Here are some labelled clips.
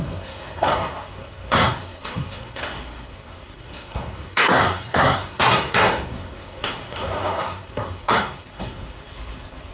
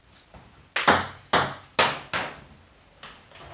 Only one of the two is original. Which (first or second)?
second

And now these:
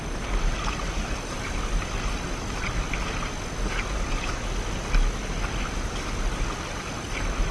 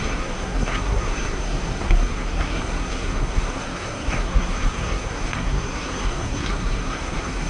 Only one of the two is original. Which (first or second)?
first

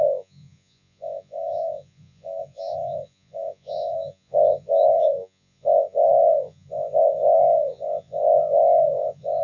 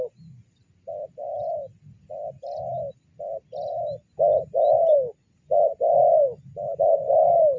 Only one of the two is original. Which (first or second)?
second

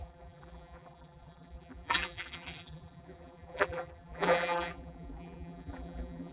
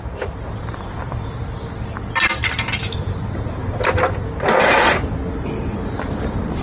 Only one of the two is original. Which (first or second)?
second